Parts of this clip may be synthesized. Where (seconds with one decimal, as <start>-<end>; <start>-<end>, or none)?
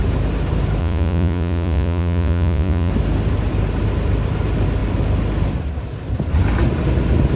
0.8-2.9